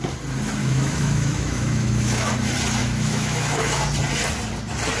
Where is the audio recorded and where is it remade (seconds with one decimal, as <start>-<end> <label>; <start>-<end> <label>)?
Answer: 0.0-0.6 recorded; 0.6-2.3 remade; 2.3-2.8 recorded; 2.8-3.8 remade; 3.8-5.0 recorded